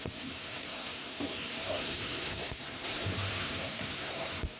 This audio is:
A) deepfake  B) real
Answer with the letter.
A